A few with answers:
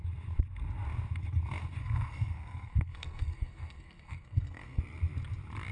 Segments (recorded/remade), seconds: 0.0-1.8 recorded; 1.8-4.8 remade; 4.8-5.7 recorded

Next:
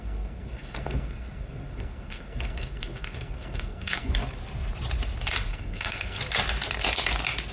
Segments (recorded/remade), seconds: 0.0-4.1 remade; 4.1-5.5 recorded; 5.5-6.2 remade; 6.2-7.5 recorded